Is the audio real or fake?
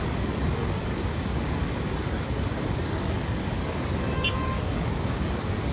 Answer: fake